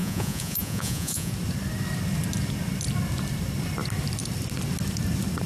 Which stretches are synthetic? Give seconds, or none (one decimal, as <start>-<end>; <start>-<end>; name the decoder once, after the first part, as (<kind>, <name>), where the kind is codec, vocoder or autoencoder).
0.0-1.3 (vocoder, Vocos)